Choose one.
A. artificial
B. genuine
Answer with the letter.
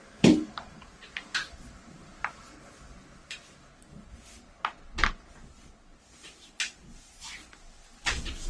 B